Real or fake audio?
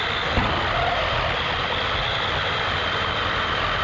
real